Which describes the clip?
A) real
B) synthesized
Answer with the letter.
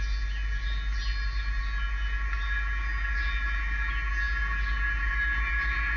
A